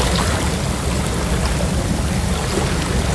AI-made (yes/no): no